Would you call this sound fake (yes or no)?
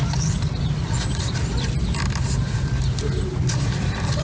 no